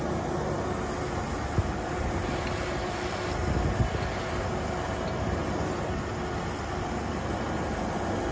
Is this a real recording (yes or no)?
yes